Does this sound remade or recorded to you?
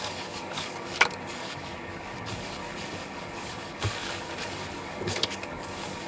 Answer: remade